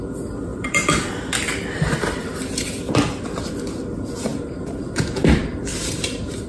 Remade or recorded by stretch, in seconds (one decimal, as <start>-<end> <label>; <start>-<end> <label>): 0.0-0.5 recorded; 0.5-1.1 remade; 1.1-4.3 recorded; 4.3-4.9 remade; 4.9-5.7 recorded; 5.7-6.5 remade